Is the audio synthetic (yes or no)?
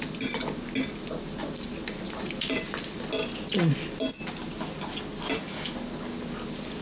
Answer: no